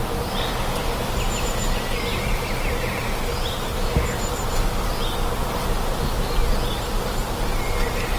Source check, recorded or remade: recorded